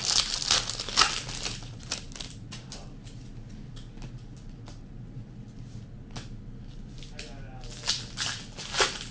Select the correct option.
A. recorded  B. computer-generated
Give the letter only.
A